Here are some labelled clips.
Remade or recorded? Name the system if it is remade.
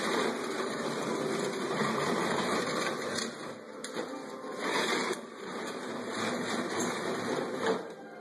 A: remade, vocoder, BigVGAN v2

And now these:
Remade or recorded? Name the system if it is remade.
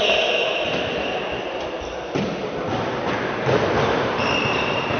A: recorded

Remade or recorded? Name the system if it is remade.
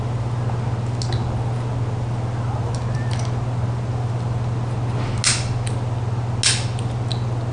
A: recorded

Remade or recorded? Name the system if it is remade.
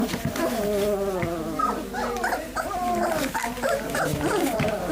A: recorded